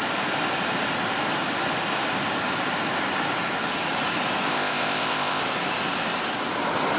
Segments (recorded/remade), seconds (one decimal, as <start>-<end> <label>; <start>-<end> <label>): 0.0-4.5 recorded; 4.5-5.4 remade; 5.4-7.0 recorded